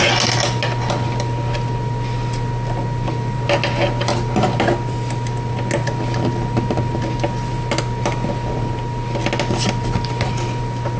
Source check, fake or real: real